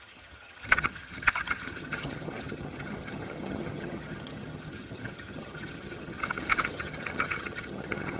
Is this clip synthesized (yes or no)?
yes